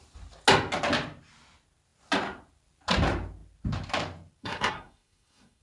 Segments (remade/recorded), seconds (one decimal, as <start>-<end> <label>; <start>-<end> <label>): 0.0-4.4 recorded; 4.4-5.6 remade